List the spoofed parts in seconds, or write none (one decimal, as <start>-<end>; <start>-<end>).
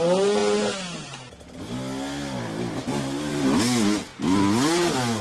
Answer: none